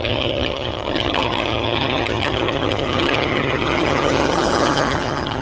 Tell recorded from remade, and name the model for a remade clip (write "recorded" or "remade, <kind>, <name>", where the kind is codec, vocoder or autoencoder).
remade, vocoder, HiFi-GAN